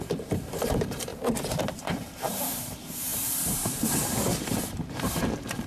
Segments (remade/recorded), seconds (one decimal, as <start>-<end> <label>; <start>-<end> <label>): 0.0-1.1 remade; 1.1-1.6 recorded; 1.6-5.7 remade